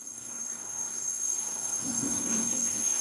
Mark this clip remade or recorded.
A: remade